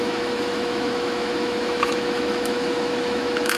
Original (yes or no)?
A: no